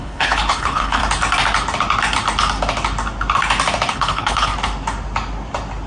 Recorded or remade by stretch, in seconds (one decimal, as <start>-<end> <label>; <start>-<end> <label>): 0.0-1.0 remade; 1.0-3.9 recorded; 3.9-4.5 remade; 4.5-5.9 recorded